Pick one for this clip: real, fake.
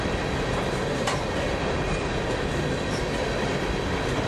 real